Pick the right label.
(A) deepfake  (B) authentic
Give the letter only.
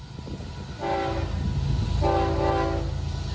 B